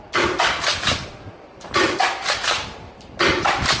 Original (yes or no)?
yes